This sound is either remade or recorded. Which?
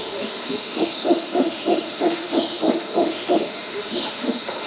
remade